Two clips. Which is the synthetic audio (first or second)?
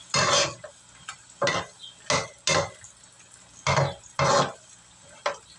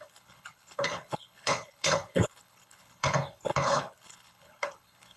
second